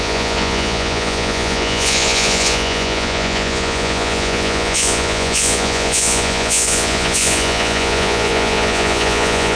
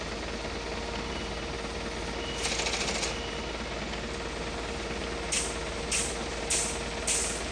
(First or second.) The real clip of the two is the second